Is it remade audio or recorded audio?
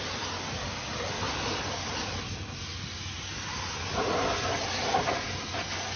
recorded